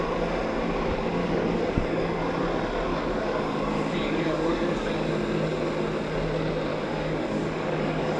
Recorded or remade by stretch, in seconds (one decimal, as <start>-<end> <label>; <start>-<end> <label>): 0.0-1.2 recorded; 1.2-2.2 remade; 2.2-2.9 recorded; 2.9-5.1 remade; 5.1-6.7 recorded; 6.7-8.2 remade